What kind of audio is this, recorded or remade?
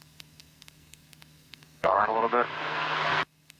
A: remade